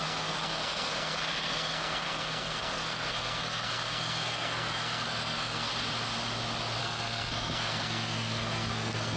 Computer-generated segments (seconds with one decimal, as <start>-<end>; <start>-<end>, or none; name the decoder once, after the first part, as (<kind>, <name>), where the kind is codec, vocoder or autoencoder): 0.0-5.7 (codec, SNAC); 6.8-9.2